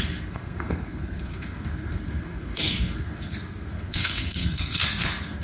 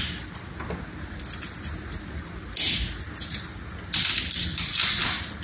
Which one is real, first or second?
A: second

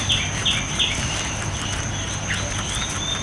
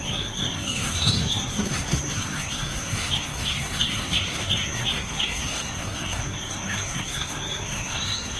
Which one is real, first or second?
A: first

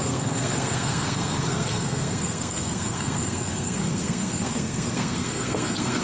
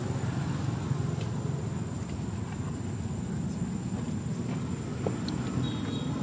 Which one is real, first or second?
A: second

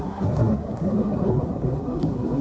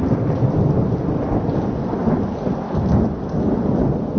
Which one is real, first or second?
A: second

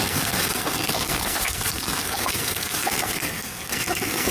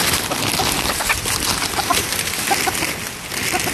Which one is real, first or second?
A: second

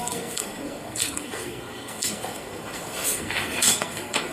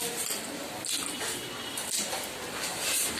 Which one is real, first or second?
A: second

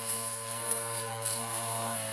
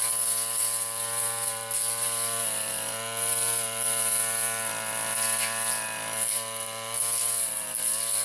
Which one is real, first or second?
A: second